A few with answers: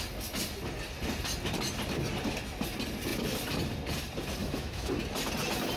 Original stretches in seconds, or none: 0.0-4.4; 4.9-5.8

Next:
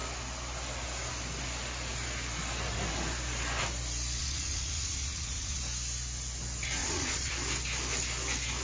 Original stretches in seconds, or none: 0.0-4.2; 5.6-6.8; 7.3-8.6

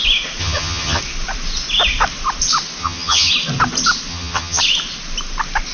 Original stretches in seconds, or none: 0.0-0.4; 1.0-2.8; 3.3-4.1; 4.6-5.7

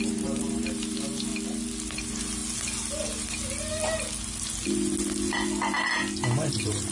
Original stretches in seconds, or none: 1.3-1.9; 2.4-6.5